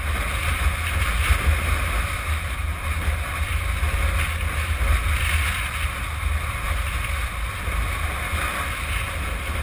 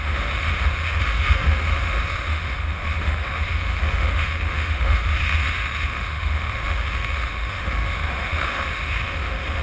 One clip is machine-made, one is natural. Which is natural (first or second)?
first